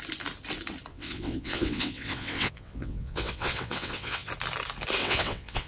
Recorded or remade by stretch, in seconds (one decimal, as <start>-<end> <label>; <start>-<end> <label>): 0.0-0.9 recorded; 0.9-4.3 remade; 4.3-5.0 recorded; 5.0-5.7 remade